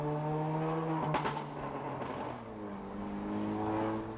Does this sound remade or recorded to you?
recorded